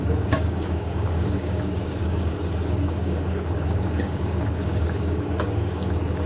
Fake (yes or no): yes